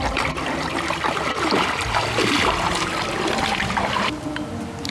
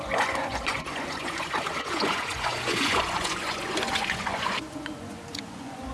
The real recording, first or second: first